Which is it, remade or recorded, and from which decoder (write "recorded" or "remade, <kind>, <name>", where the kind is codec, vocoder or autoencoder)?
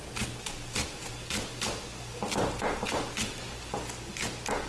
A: recorded